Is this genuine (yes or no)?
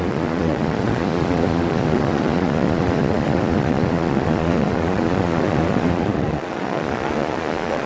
no